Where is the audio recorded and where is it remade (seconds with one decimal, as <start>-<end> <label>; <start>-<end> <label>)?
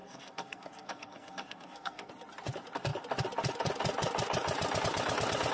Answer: 0.0-2.1 remade; 2.1-5.5 recorded